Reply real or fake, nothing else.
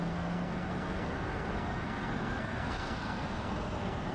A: fake